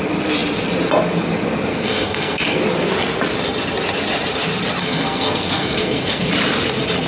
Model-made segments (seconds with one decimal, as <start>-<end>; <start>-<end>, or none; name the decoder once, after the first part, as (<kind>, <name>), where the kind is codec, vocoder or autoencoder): 1.7-2.6 (codec, SNAC); 4.8-6.3